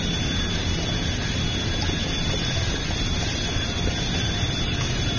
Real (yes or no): yes